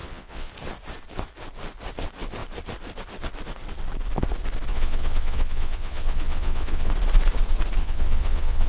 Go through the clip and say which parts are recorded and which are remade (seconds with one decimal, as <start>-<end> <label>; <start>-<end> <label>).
0.0-0.5 remade; 0.5-4.7 recorded; 4.7-6.9 remade; 6.9-7.8 recorded; 7.8-8.7 remade